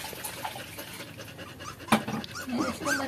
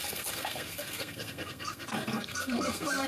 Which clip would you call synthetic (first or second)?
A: second